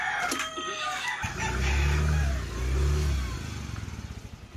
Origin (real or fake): real